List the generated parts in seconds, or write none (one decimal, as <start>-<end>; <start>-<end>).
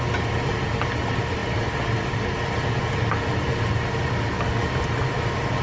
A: none